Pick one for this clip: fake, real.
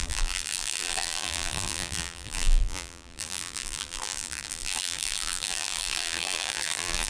fake